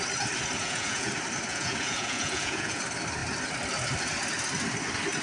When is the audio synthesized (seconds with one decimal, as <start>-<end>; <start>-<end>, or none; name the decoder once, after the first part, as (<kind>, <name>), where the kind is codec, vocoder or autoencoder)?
0.6-1.1 (vocoder, Vocos); 1.5-2.8